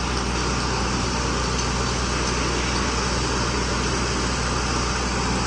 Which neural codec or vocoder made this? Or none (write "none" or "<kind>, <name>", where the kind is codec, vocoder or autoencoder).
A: none